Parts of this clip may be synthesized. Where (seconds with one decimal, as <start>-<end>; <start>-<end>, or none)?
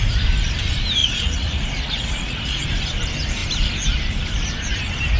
1.0-2.6